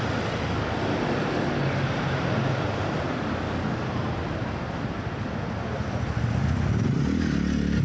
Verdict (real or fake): real